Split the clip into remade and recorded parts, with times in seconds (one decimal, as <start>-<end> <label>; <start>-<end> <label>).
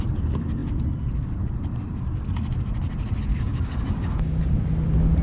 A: 0.0-3.3 recorded; 3.3-4.4 remade; 4.4-5.2 recorded